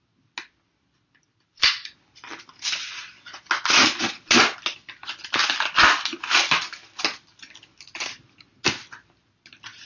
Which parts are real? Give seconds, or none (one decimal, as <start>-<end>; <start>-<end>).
0.0-9.8

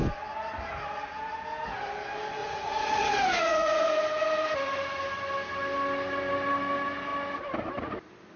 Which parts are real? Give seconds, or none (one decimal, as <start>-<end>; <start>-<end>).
0.0-2.4; 4.0-8.4

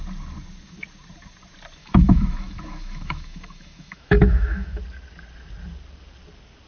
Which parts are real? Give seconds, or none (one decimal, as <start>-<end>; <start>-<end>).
0.0-1.8; 4.8-6.7

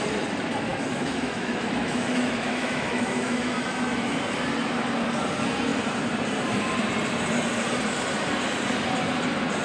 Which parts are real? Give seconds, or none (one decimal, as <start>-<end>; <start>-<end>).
0.0-0.7; 4.2-9.6

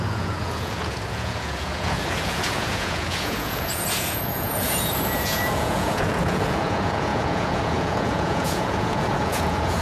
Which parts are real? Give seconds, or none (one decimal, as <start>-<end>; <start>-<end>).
none

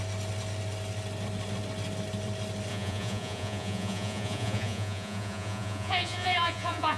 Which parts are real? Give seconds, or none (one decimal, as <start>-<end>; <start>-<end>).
0.0-2.7